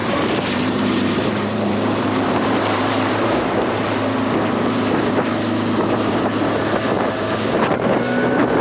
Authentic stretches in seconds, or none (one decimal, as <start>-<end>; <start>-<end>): 3.8-8.6